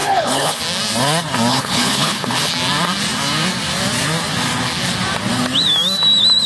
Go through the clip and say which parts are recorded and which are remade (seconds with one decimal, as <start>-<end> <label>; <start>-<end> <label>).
0.0-0.6 remade; 0.6-1.5 recorded; 1.5-2.5 remade; 2.5-6.5 recorded